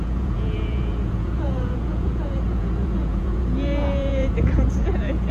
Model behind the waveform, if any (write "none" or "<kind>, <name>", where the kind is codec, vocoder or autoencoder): vocoder, Vocos